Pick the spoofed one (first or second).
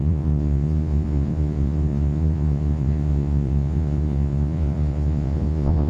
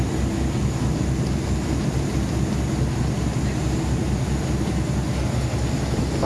first